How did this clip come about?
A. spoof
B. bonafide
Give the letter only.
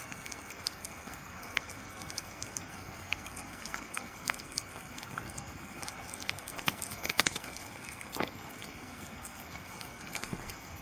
A